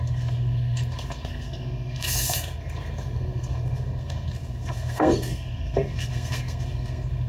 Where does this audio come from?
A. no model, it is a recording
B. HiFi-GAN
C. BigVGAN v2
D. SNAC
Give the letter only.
D